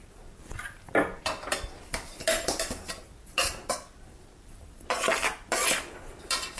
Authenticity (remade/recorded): recorded